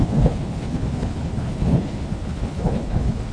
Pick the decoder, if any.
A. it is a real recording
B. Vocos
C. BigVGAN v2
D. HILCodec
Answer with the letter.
D